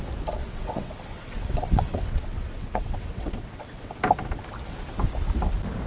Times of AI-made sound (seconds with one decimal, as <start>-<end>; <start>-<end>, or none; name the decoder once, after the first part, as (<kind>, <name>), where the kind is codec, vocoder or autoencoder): 0.4-3.9 (vocoder, WaveNeXt)